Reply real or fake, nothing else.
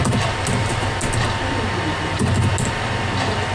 real